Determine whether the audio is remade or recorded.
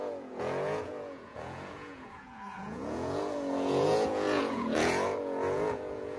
remade